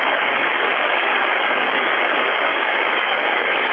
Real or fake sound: fake